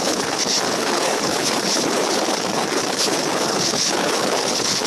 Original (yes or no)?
no